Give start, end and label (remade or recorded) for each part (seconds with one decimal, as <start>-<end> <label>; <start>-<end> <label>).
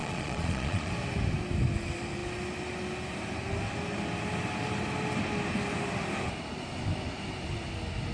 0.0-0.9 remade; 0.9-8.1 recorded